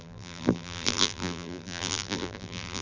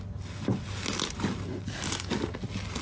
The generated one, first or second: first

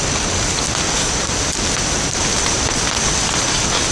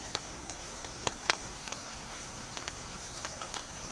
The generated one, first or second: second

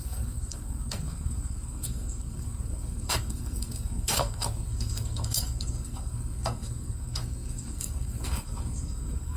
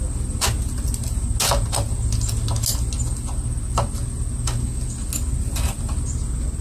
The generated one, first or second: first